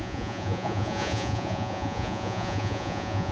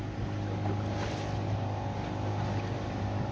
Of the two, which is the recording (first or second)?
second